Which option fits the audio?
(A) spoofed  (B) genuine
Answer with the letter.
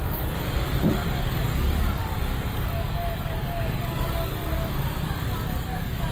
A